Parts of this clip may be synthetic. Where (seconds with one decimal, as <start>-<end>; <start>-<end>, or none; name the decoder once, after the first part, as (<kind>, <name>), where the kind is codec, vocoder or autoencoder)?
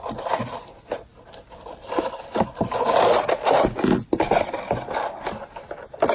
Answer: none